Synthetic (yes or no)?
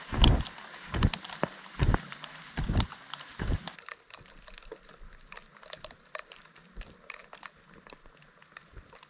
no